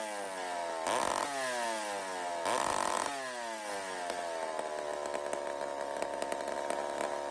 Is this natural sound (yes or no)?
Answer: yes